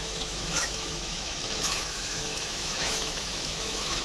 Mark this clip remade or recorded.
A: remade